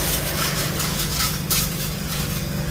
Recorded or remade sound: remade